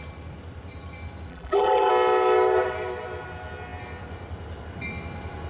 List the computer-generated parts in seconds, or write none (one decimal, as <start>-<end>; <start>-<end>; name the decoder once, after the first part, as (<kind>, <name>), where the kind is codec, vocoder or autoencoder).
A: 1.3-1.9 (vocoder, BigVGAN v2)